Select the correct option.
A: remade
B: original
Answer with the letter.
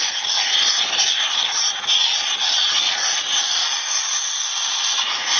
B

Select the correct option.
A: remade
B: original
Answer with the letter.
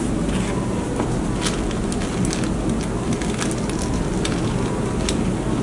B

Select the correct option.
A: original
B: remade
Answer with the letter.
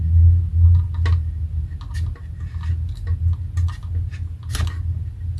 A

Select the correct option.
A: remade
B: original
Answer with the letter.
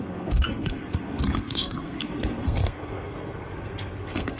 A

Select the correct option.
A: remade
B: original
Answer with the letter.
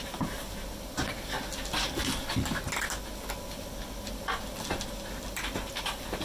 B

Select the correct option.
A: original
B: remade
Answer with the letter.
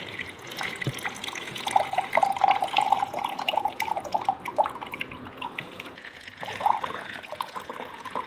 B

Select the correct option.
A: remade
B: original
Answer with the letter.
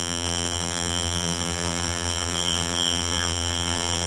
A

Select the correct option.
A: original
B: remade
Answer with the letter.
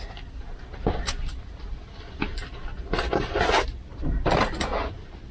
A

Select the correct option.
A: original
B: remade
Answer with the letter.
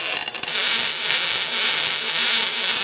A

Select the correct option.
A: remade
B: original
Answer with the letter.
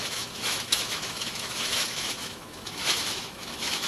A